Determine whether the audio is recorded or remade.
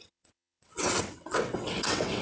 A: remade